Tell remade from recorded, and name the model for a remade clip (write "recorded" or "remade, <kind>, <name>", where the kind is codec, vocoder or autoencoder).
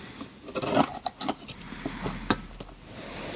recorded